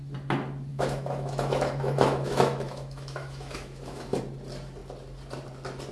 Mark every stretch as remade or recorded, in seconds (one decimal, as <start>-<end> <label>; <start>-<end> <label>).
0.0-0.7 recorded; 0.7-4.2 remade; 4.2-5.9 recorded